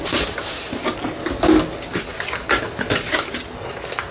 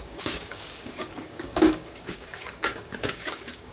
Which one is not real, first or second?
second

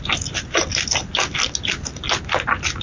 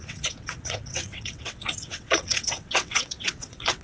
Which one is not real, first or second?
second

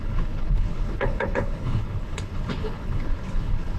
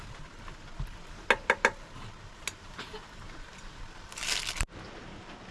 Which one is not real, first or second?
first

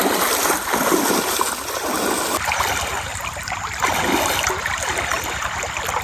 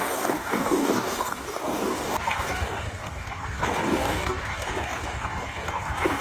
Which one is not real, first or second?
second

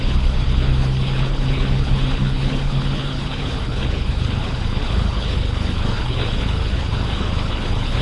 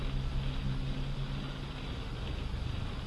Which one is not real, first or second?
first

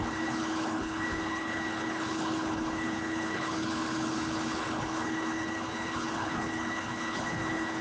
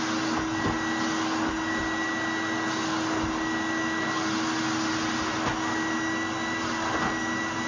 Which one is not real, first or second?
first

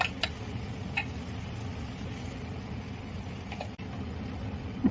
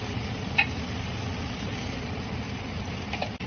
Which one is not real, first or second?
second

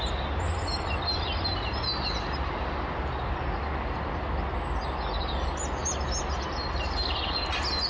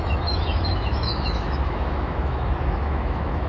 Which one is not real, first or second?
second